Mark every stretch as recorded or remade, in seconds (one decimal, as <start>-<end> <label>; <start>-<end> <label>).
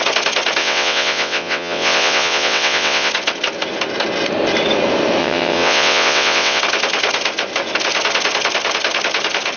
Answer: 0.0-0.6 recorded; 0.6-3.1 remade; 3.1-5.2 recorded; 5.2-6.6 remade; 6.6-9.6 recorded